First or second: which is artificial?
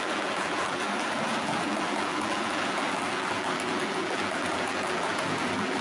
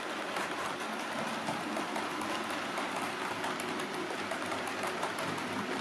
first